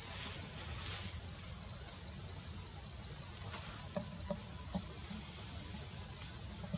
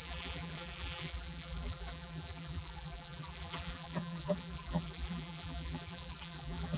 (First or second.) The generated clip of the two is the second